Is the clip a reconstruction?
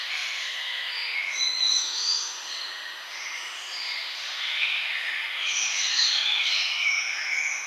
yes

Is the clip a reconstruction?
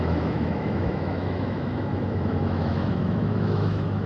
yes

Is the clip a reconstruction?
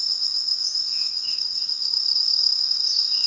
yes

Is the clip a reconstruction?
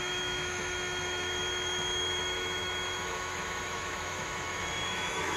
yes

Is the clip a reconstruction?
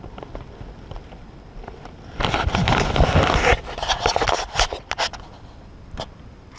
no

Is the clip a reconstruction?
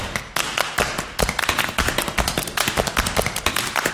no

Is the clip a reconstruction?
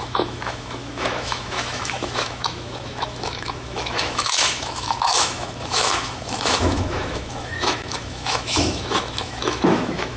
yes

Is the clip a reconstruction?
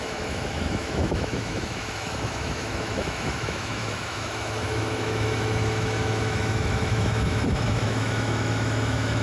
yes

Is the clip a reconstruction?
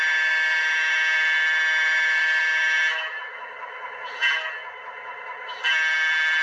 yes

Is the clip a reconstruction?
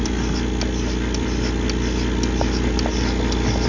no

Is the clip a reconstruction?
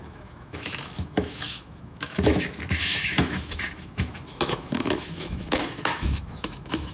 yes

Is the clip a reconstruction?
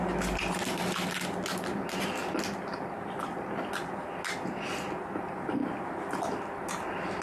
no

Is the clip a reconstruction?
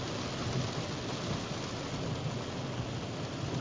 no